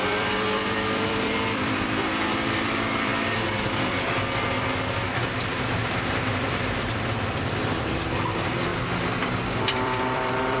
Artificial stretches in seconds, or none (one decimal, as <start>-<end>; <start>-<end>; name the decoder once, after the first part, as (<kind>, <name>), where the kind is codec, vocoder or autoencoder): 0.0-3.1 (vocoder, BigVGAN v2); 7.3-8.7; 9.6-10.6